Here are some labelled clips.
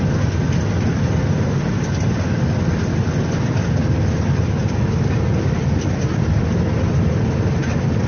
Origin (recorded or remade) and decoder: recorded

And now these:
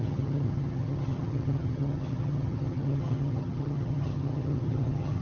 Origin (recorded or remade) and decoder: remade, vocoder, HiFi-GAN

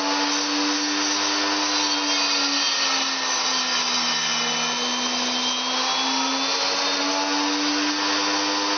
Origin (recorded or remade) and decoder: recorded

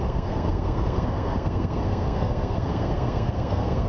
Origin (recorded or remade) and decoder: remade, codec, SNAC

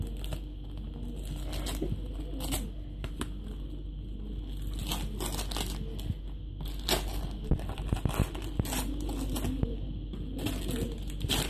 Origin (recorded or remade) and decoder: recorded